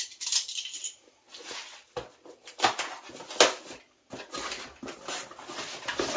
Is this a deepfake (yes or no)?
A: no